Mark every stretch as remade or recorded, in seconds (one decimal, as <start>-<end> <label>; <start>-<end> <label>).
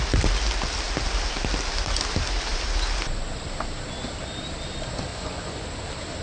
0.0-5.1 recorded; 5.1-5.8 remade; 5.8-6.2 recorded